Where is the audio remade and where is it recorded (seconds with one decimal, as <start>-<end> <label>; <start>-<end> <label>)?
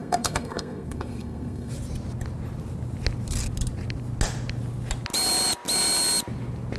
0.0-1.7 remade; 1.7-6.8 recorded